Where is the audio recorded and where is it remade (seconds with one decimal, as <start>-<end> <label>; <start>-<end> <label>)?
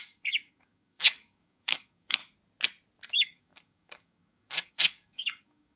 0.0-2.2 remade; 2.2-3.1 recorded; 3.1-5.8 remade